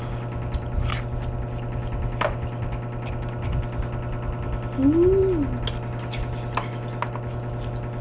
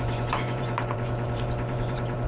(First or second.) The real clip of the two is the first